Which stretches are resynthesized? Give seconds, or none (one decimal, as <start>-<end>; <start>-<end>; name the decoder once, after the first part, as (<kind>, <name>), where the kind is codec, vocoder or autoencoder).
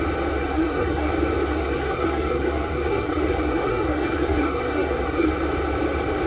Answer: 0.4-1.1 (codec, SNAC); 1.5-5.3